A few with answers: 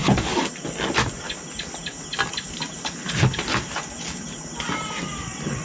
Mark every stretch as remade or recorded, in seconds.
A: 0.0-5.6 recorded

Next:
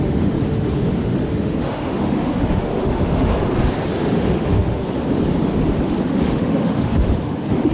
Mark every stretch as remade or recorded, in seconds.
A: 0.0-3.3 remade; 3.3-4.0 recorded; 4.0-4.8 remade; 4.8-6.0 recorded; 6.0-7.7 remade

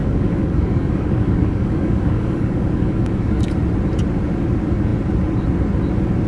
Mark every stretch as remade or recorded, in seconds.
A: 0.0-3.5 remade; 3.5-6.3 recorded

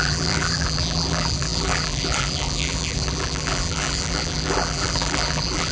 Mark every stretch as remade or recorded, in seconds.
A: 0.0-5.7 remade

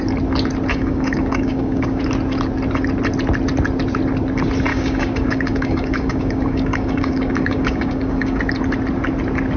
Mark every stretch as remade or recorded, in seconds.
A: 0.0-0.7 recorded; 0.7-2.0 remade; 2.0-4.7 recorded; 4.7-8.4 remade; 8.4-9.6 recorded